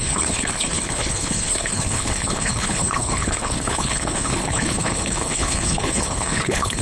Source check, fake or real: fake